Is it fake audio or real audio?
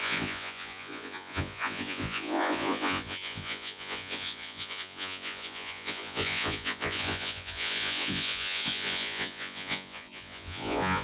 fake